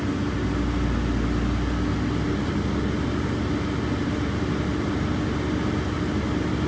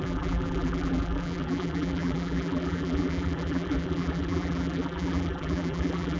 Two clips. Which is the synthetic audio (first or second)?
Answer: second